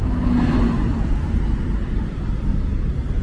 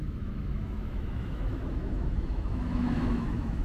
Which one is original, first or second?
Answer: first